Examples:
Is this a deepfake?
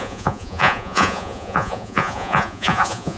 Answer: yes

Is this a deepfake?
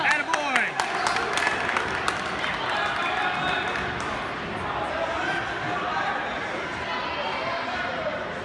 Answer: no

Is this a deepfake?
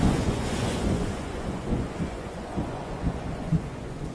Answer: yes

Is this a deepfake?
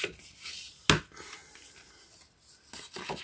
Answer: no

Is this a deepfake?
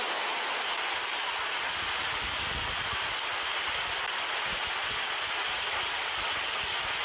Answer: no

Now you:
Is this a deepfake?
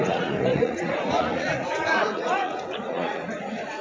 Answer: yes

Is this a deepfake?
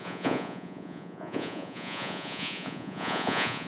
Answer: yes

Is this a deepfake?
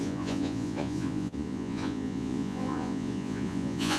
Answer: yes